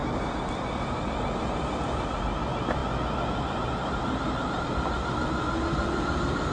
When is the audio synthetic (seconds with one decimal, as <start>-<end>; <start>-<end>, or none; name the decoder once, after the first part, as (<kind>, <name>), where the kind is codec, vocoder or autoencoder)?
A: none